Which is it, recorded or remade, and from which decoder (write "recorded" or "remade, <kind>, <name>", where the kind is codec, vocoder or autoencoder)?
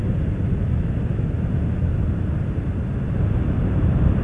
recorded